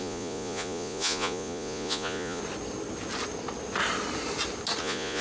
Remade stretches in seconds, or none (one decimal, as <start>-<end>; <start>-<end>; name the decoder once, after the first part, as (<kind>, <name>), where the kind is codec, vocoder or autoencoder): 0.0-2.4 (vocoder, Vocos); 4.8-5.2